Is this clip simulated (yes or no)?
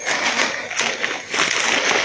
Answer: no